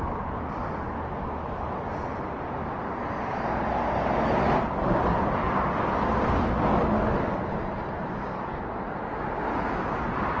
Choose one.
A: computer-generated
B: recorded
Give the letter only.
B